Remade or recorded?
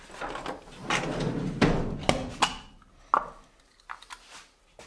recorded